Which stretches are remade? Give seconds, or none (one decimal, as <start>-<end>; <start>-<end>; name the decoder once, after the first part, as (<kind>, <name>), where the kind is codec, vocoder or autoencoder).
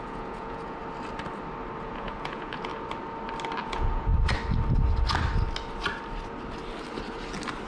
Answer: 0.0-0.8 (vocoder, Vocos); 1.8-2.7; 3.6-4.1